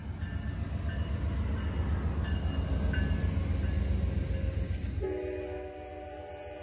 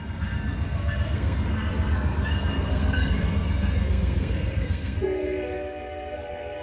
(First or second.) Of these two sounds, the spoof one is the second